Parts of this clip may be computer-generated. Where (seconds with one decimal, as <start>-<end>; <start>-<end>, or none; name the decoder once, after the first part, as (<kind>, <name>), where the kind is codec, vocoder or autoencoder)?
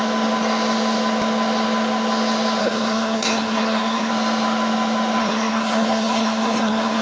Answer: 2.6-4.1 (codec, SNAC); 5.2-7.0